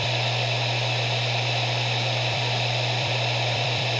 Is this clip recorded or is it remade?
remade